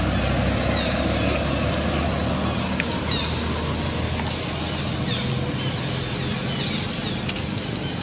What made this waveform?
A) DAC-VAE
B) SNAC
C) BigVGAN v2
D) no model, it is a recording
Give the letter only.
D